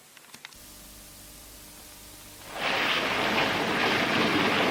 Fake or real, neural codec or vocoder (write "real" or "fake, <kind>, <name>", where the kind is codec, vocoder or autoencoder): real